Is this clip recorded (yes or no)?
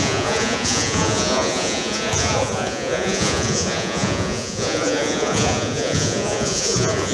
no